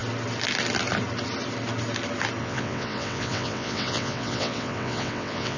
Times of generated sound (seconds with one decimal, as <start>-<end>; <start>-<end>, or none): 2.4-5.6